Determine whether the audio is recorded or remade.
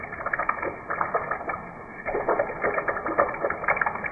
recorded